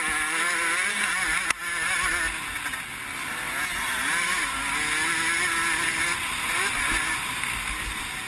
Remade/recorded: recorded